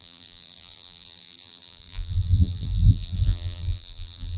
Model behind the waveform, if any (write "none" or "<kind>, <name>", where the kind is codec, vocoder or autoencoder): vocoder, BigVGAN v2